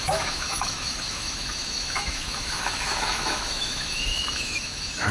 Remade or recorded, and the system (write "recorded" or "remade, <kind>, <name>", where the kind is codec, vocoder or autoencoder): remade, autoencoder, DAC-VAE